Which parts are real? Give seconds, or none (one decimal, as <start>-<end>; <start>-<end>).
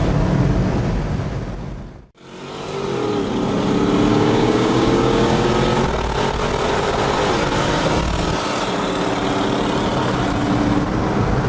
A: 0.0-4.1; 5.5-11.5